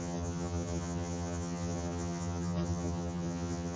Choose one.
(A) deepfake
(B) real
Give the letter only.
A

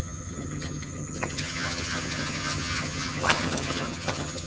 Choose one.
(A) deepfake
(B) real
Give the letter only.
A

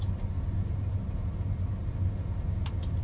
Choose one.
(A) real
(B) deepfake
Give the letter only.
A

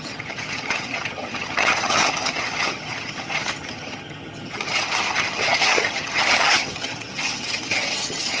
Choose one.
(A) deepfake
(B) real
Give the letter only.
A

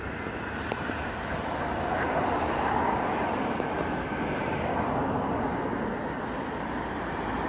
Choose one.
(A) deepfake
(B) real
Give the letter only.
B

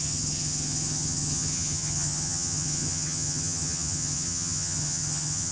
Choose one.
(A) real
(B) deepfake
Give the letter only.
B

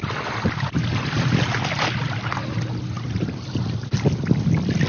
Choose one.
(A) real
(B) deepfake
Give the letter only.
A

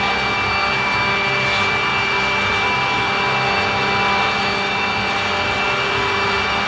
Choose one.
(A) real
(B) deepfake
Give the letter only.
A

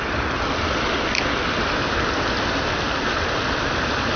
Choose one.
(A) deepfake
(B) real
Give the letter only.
B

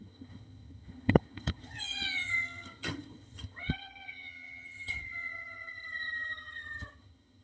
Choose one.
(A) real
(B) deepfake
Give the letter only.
B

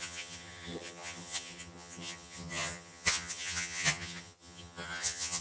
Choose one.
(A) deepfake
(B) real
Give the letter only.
A